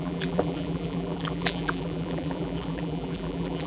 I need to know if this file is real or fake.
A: fake